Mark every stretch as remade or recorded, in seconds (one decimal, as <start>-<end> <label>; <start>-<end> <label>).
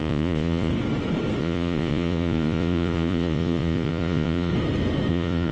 0.0-0.7 remade; 0.7-1.4 recorded; 1.4-4.5 remade; 4.5-5.1 recorded; 5.1-5.5 remade